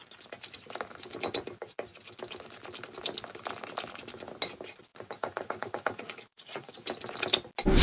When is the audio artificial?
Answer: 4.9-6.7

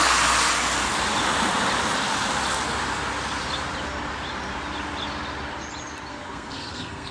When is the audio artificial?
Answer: 6.1-7.1